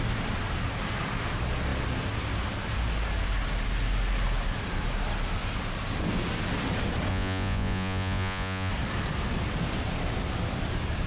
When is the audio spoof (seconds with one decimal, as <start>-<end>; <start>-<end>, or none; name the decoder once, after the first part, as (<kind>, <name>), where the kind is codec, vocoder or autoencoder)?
7.1-8.7 (vocoder, Vocos)